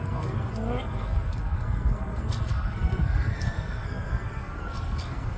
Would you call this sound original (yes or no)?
no